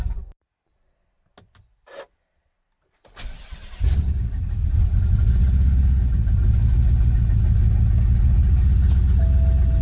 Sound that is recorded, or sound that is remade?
recorded